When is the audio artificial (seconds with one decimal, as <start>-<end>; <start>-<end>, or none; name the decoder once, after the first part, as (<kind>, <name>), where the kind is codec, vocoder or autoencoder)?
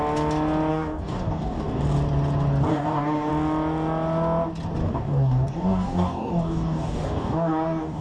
0.7-1.8 (codec, DAC); 2.7-3.3; 4.8-8.0